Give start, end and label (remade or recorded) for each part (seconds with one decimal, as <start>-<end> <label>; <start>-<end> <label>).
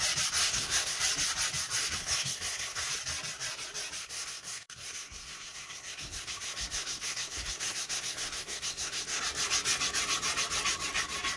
0.0-0.4 recorded; 0.4-1.0 remade; 1.0-1.8 recorded; 1.8-2.9 remade; 2.9-4.0 recorded; 4.0-9.2 remade; 9.2-11.4 recorded